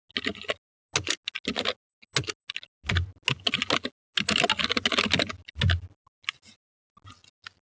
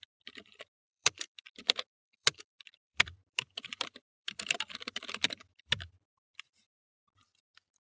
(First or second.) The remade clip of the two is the second